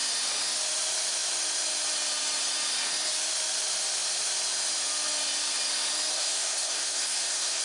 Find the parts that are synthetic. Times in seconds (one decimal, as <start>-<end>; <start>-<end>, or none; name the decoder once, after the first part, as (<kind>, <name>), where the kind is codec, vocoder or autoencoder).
6.1-7.6 (codec, SNAC)